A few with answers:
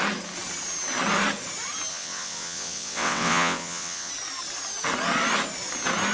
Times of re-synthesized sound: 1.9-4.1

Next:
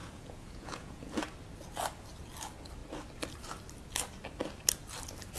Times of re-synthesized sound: 0.0-1.1

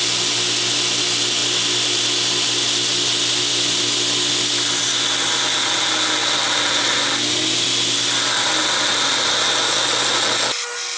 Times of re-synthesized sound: none